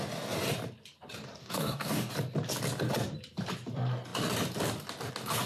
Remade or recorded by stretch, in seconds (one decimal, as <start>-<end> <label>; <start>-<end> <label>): 0.0-1.4 recorded; 1.4-2.1 remade; 2.1-5.5 recorded

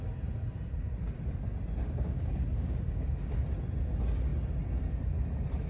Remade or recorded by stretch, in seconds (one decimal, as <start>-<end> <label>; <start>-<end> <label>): 0.0-1.8 recorded; 1.8-3.4 remade; 3.4-5.7 recorded

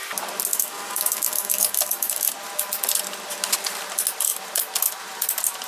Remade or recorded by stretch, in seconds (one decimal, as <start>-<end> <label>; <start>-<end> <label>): 0.0-0.5 recorded; 0.5-2.3 remade; 2.3-5.7 recorded

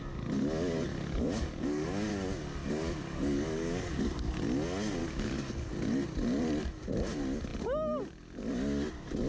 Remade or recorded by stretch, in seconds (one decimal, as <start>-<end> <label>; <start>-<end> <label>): 0.0-0.9 recorded; 0.9-2.1 remade; 2.1-2.6 recorded; 2.6-4.0 remade; 4.0-5.0 recorded; 5.0-5.7 remade; 5.7-9.3 recorded

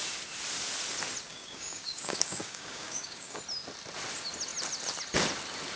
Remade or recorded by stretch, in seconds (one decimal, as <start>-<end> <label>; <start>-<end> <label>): 0.0-1.3 recorded; 1.3-3.4 remade; 3.4-5.8 recorded

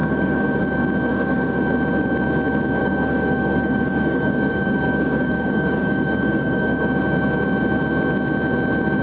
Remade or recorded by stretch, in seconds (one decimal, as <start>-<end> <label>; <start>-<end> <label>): 0.0-0.6 remade; 0.6-1.1 recorded; 1.1-1.6 remade; 1.6-2.8 recorded; 2.8-7.0 remade; 7.0-9.0 recorded

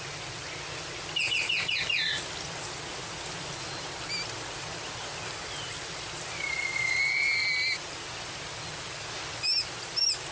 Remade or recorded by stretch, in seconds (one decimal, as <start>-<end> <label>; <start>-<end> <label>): 0.0-10.3 recorded